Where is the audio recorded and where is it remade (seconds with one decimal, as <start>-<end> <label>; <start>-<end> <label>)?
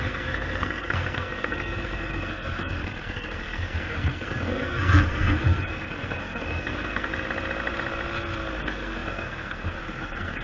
0.0-7.1 remade; 7.1-8.6 recorded; 8.6-10.4 remade